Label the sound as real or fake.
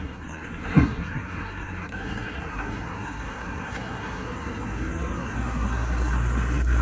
fake